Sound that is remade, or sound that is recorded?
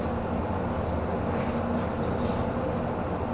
recorded